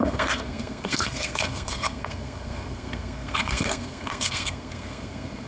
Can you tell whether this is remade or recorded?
remade